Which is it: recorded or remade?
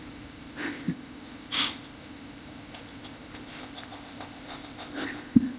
remade